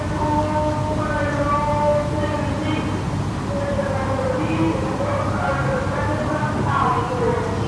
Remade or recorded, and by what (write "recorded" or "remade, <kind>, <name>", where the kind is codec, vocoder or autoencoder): recorded